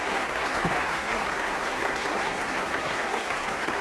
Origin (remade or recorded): remade